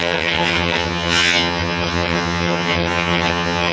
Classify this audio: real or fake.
fake